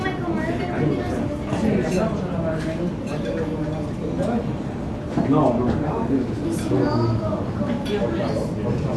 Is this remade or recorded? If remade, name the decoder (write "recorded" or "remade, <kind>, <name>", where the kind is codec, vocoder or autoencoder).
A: recorded